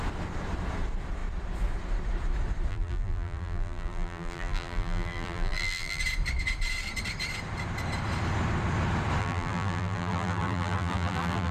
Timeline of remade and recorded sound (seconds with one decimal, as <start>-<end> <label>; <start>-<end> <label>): 0.0-2.7 recorded; 2.7-6.0 remade; 6.0-9.2 recorded; 9.2-11.5 remade